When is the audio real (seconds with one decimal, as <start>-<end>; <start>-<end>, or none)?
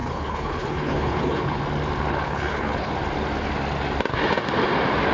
1.6-2.1; 2.9-5.1